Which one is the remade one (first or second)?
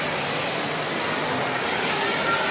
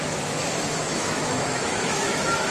second